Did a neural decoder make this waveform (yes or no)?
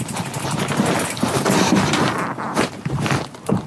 no